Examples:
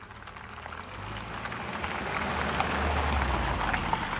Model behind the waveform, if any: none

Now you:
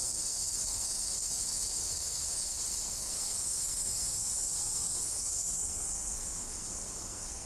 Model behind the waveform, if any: codec, SNAC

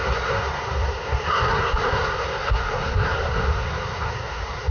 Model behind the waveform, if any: codec, SNAC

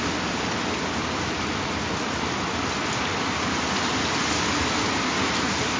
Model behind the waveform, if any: none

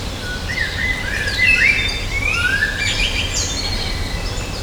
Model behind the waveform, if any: none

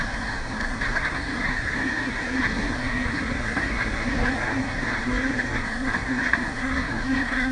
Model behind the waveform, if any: codec, SNAC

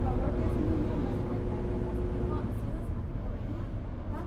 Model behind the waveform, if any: none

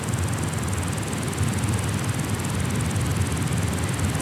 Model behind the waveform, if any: none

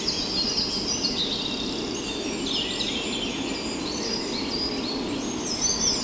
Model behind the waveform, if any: none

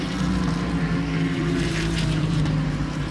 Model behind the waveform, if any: vocoder, BigVGAN v2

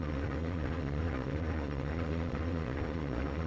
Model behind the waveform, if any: vocoder, Vocos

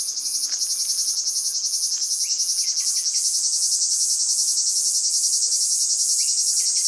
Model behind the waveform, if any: none